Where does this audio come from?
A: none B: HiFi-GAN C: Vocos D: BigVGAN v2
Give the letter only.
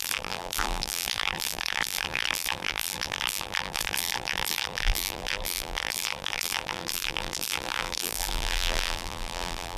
D